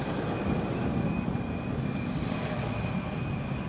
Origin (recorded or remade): recorded